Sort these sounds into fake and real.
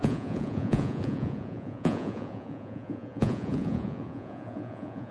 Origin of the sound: fake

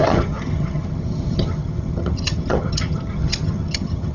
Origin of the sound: fake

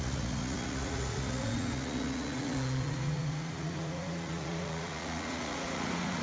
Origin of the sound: fake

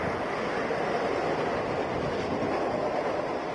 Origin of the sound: real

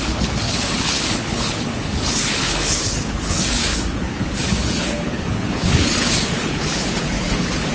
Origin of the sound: fake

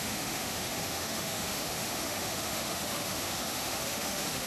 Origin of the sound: fake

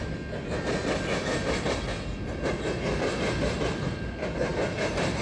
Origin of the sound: real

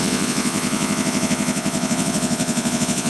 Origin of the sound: fake